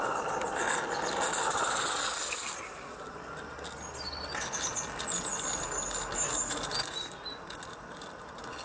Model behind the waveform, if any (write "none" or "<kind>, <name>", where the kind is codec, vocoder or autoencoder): none